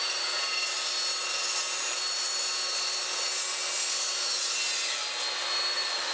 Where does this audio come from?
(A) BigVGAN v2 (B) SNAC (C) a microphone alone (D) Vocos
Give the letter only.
C